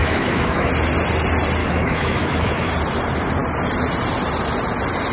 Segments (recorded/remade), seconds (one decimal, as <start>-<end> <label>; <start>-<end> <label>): 0.0-0.7 remade; 0.7-1.6 recorded; 1.6-2.7 remade; 2.7-5.1 recorded